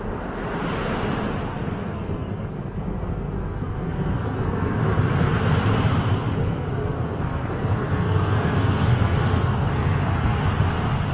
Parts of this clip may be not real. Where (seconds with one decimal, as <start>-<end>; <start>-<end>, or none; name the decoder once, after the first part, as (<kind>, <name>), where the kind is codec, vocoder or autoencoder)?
1.5-4.8 (codec, SNAC); 6.4-10.4